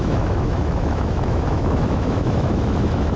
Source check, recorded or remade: remade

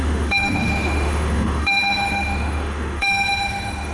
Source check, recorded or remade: remade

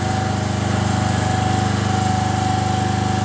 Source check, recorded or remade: recorded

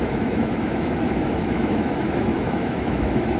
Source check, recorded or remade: remade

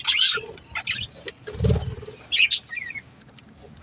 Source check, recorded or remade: recorded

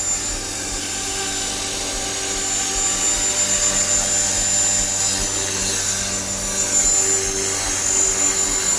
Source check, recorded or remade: recorded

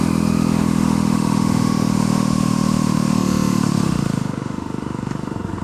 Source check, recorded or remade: remade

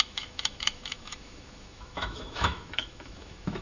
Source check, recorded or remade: remade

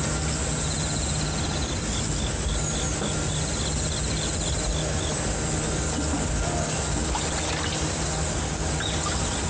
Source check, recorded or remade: recorded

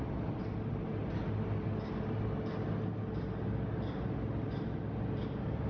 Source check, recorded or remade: recorded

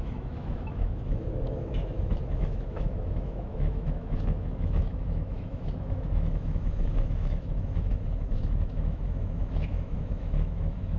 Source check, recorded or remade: remade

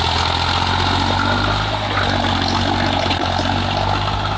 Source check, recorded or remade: recorded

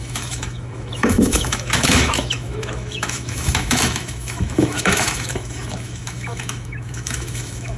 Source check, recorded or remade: remade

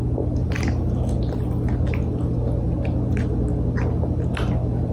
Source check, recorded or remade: recorded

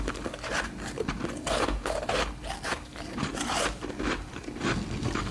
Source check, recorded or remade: recorded